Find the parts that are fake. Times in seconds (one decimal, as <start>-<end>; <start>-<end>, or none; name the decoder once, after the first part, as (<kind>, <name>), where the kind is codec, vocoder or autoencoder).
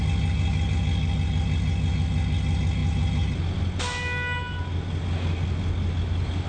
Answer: none